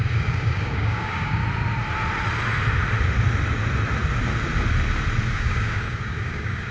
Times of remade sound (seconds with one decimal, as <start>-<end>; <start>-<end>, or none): 0.0-1.4; 5.3-6.7